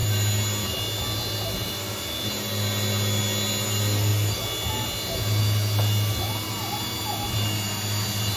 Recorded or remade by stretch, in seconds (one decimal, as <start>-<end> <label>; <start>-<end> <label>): 0.0-8.4 recorded